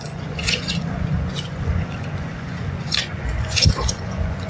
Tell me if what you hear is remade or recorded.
remade